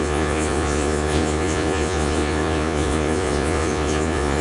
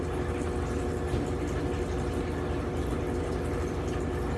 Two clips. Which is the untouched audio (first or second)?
second